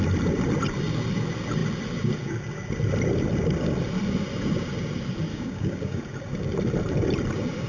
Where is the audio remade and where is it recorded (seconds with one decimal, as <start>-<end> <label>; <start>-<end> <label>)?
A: 0.0-5.3 recorded; 5.3-6.0 remade; 6.0-7.7 recorded